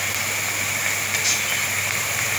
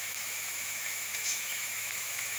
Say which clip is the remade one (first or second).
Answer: second